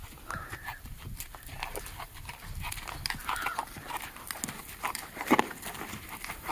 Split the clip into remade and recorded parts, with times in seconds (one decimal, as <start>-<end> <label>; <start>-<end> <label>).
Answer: 0.0-1.5 recorded; 1.5-5.3 remade; 5.3-6.5 recorded